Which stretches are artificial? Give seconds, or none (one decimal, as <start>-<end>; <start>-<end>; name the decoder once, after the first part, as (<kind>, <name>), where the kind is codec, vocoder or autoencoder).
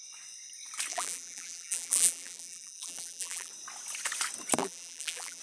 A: 0.9-3.5 (vocoder, BigVGAN v2); 4.6-5.4